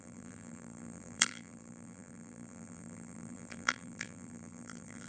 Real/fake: fake